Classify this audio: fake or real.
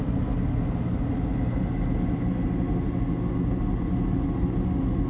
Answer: real